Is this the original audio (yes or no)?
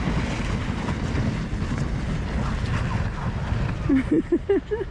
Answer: yes